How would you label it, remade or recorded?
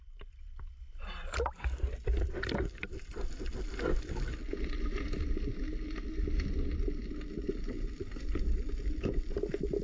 recorded